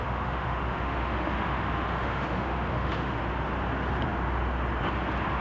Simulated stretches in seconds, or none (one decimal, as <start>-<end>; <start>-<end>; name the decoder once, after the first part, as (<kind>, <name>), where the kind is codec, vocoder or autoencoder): 0.0-3.2 (autoencoder, DAC-VAE)